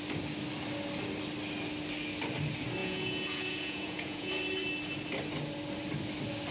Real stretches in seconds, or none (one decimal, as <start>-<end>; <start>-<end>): 0.0-2.8; 4.3-6.5